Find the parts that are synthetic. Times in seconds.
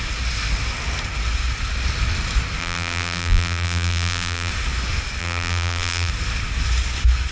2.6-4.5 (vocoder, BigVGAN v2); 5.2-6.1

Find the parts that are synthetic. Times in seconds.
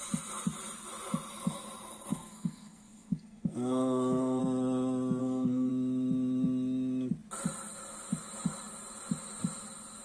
2.1-4.4 (codec, SNAC); 5.2-5.7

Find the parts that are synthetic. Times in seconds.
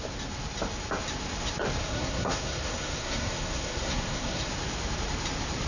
1.8-4.5 (codec, SNAC)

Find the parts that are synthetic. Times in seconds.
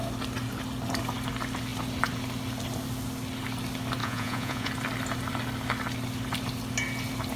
4.0-4.7 (vocoder, Vocos)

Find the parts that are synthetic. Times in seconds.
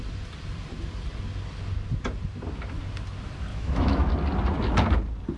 3.5-4.1 (autoencoder, DAC-VAE)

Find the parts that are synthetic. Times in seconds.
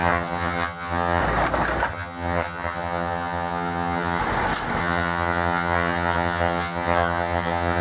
0.0-1.2 (vocoder, HiFi-GAN); 1.9-4.2; 4.8-7.8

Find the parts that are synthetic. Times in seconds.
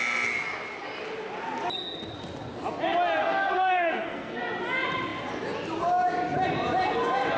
3.2-4.4 (codec, SNAC)